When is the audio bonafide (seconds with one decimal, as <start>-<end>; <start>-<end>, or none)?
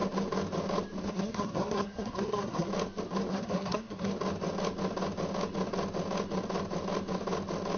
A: 0.0-1.1; 2.7-3.3; 4.1-7.8